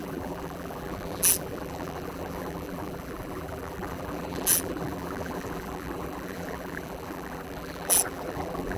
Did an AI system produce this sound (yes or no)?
yes